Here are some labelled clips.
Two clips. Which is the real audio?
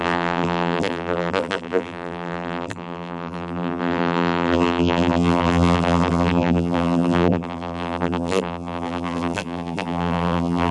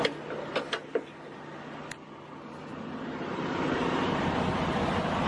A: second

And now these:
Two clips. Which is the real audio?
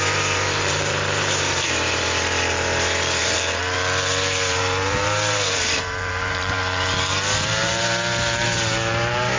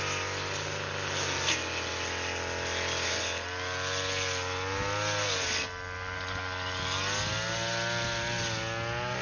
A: second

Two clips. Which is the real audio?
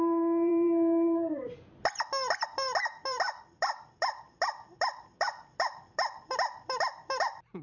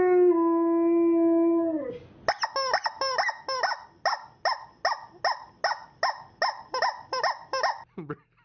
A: second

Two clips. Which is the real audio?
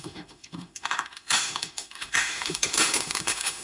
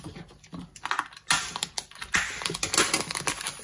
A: second